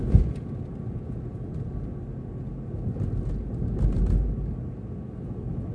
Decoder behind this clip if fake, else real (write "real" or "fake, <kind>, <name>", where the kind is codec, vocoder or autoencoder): real